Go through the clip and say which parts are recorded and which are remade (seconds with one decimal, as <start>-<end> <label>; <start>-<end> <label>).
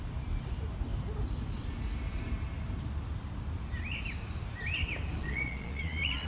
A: 0.0-5.2 recorded; 5.2-6.3 remade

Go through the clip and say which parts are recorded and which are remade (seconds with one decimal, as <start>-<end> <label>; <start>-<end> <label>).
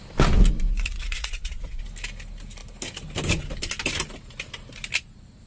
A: 0.0-0.7 recorded; 0.7-1.8 remade; 1.8-5.5 recorded